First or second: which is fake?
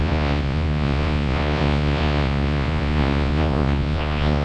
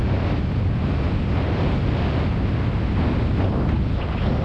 first